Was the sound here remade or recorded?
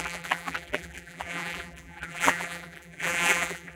remade